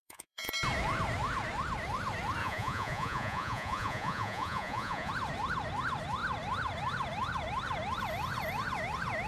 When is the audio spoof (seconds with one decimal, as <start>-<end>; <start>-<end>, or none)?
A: 0.0-0.5; 2.4-5.1

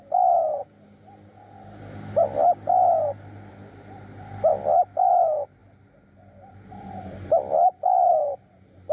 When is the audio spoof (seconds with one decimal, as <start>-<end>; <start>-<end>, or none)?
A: none

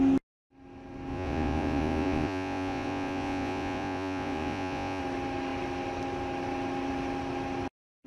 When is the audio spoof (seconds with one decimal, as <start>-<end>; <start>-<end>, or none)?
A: 1.1-5.0

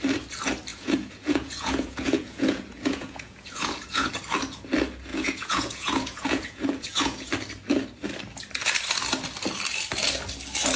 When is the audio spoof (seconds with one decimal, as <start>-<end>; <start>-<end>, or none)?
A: 0.7-4.1; 5.1-7.3

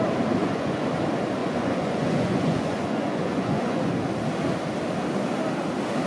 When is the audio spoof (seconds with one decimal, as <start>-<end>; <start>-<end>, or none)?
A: 0.4-0.9; 1.4-3.9

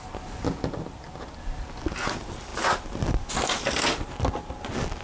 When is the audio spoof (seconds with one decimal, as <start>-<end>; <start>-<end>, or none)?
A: none

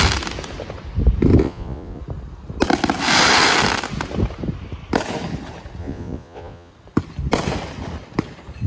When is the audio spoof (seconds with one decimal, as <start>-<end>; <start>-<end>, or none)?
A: 1.4-2.0; 5.8-6.7